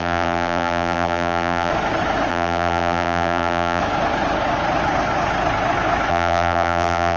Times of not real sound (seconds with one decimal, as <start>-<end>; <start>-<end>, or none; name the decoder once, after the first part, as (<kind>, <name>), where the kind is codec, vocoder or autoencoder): 0.0-1.7 (vocoder, BigVGAN v2); 2.3-3.8; 6.1-7.2